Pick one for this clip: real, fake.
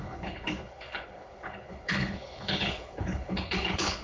fake